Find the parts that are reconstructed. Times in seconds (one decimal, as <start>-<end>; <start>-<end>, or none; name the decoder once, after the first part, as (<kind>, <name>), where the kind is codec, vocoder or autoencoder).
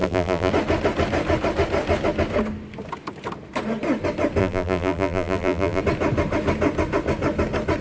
0.0-0.5 (vocoder, BigVGAN v2); 4.4-5.8